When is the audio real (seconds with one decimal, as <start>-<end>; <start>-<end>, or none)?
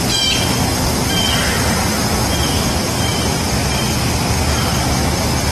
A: 0.0-5.5